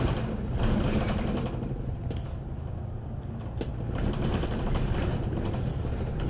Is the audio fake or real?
real